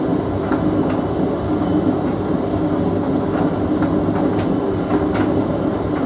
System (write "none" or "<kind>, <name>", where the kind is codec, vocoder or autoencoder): none